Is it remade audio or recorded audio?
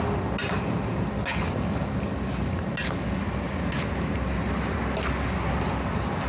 recorded